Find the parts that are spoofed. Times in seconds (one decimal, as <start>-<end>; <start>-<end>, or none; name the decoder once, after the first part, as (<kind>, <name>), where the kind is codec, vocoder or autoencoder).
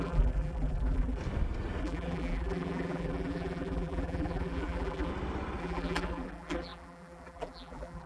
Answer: 0.0-1.2 (vocoder, BigVGAN v2); 1.8-5.1; 5.6-8.1